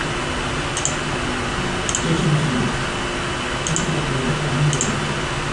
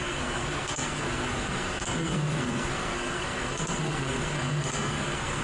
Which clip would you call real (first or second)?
first